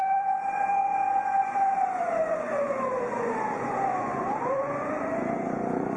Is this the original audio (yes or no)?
no